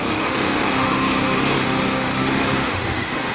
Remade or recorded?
remade